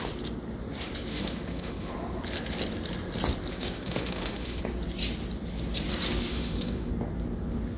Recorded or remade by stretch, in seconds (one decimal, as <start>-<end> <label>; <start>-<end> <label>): 0.0-1.1 recorded; 1.1-1.9 remade; 1.9-3.5 recorded; 3.5-4.6 remade; 4.6-6.3 recorded; 6.3-6.9 remade; 6.9-7.8 recorded

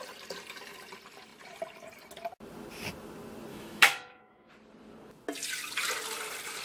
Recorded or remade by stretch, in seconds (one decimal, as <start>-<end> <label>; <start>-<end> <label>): 0.0-3.5 recorded; 3.5-4.5 remade; 4.5-6.6 recorded